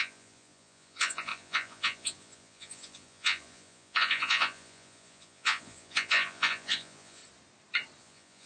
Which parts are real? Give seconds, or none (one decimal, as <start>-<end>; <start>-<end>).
7.2-8.0